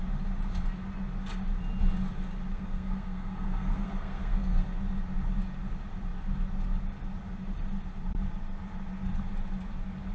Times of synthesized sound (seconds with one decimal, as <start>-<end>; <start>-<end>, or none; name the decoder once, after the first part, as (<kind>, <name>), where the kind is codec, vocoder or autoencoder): 2.5-4.7 (codec, SNAC)